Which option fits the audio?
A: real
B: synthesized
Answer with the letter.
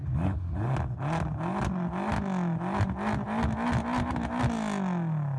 A